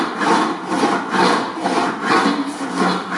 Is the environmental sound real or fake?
real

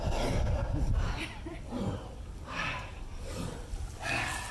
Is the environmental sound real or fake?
real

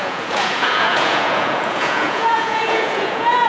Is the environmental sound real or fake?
fake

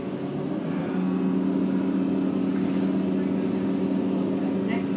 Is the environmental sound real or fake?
real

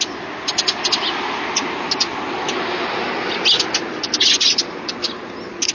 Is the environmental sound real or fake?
real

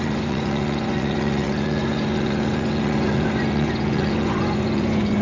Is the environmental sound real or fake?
fake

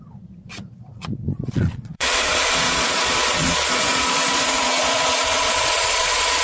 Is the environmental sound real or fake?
fake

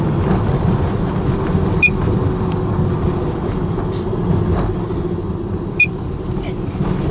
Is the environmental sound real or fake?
real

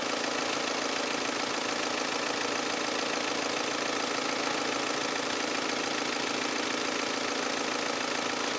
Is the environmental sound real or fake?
real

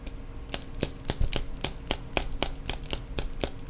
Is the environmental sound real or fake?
real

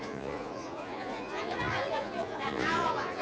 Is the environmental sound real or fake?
fake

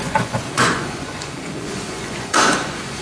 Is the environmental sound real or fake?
fake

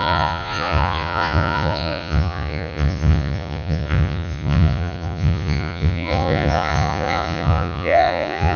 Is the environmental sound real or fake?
fake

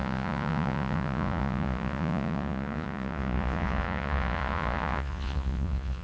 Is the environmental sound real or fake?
fake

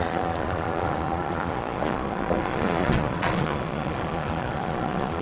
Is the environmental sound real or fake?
fake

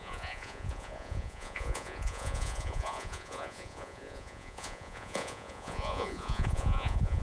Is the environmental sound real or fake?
fake